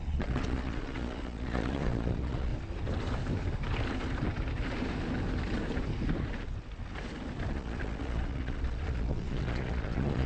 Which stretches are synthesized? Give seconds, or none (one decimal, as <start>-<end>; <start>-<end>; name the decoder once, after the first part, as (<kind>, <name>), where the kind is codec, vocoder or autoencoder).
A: 0.0-2.5 (vocoder, Vocos); 7.5-10.3

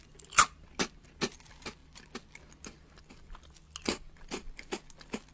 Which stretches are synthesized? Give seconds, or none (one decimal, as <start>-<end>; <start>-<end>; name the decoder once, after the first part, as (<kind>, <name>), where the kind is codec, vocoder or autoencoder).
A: none

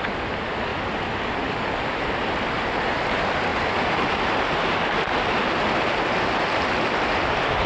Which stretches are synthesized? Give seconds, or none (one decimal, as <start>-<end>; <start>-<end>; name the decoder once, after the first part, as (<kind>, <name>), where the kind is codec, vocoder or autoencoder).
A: none